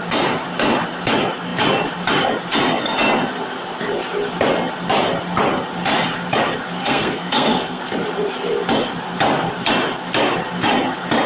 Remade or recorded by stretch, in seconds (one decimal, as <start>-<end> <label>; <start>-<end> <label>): 0.0-6.8 recorded; 6.8-7.8 remade; 7.8-11.3 recorded